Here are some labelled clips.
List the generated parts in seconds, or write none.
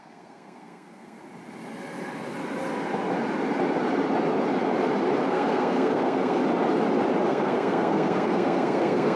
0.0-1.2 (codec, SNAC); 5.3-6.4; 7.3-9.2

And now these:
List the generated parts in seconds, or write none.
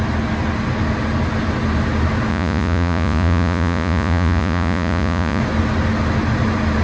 2.3-5.4 (vocoder, Vocos)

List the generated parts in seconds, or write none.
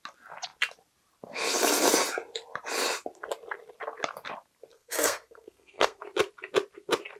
4.7-6.0 (codec, SNAC)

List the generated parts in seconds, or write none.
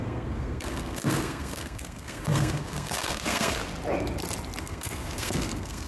0.0-3.6 (codec, SNAC); 4.6-5.9